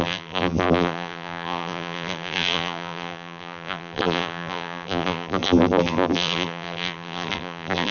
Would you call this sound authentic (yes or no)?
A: no